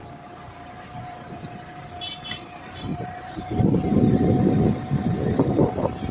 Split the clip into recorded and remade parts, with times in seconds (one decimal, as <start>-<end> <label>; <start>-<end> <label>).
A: 0.0-1.5 remade; 1.5-2.9 recorded; 2.9-3.4 remade; 3.4-6.1 recorded